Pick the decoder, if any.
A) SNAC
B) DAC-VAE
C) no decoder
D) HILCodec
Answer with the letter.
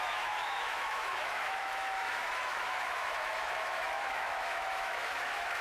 B